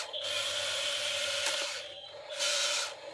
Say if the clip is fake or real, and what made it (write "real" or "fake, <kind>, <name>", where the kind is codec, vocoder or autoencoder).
real